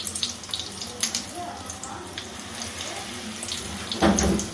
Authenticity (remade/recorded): recorded